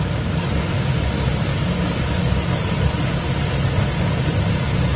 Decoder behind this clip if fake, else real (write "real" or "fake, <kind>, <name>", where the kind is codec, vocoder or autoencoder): real